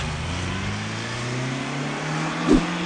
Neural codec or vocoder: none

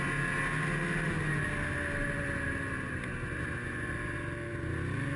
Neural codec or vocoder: none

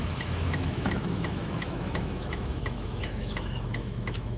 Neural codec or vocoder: autoencoder, DAC-VAE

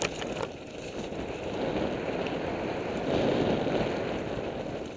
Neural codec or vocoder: none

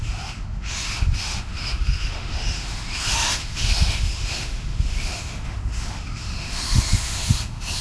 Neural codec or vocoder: autoencoder, DAC-VAE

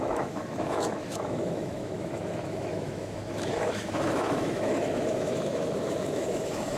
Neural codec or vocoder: autoencoder, DAC-VAE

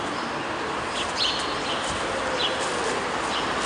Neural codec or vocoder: none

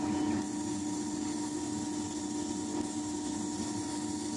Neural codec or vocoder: none